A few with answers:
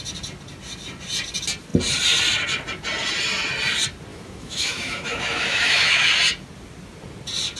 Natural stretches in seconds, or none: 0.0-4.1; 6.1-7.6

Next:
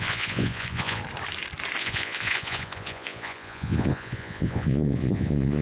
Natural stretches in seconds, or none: 1.0-1.8

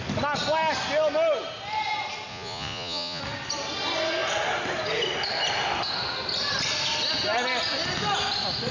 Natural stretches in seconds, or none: 0.0-2.3; 3.2-8.7